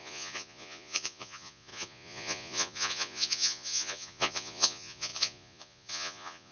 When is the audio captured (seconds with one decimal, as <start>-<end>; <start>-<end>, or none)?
none